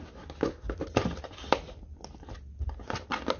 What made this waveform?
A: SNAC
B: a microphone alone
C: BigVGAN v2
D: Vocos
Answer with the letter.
B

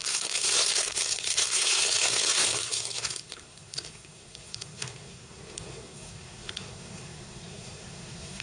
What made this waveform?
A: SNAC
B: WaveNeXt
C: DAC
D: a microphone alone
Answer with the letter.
A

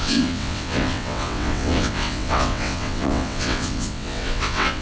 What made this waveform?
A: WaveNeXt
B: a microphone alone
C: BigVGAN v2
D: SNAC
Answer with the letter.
A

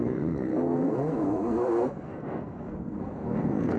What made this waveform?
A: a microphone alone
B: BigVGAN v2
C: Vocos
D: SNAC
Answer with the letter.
D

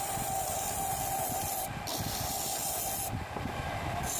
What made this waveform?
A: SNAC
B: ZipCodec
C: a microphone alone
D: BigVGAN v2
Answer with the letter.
C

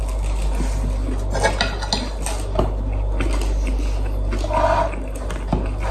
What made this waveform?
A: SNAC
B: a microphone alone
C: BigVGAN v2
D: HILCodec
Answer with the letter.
B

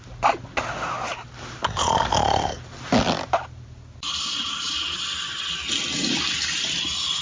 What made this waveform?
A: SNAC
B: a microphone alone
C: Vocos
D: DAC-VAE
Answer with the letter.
B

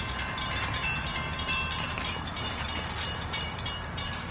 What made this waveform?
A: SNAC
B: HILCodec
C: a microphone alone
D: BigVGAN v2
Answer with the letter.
D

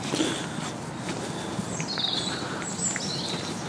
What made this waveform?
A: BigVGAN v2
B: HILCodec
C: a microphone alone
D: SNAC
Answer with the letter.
C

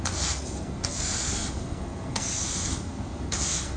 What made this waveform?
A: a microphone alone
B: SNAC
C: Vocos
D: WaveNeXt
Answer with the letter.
B